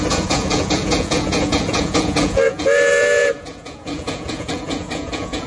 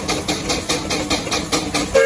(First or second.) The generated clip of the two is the first